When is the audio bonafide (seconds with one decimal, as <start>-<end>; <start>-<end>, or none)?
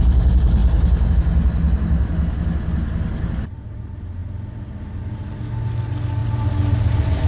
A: 0.0-7.3